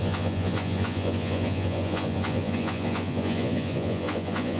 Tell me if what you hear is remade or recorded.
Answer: remade